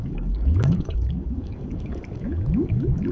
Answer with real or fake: fake